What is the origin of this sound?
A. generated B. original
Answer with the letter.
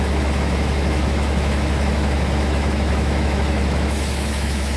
A